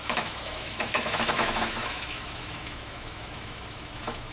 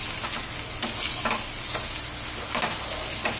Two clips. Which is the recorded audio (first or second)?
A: second